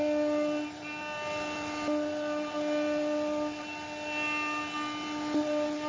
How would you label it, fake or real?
real